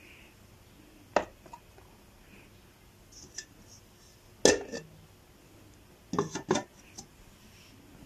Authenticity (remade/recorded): recorded